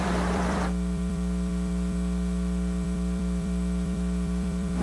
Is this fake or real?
fake